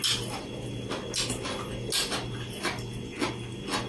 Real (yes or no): yes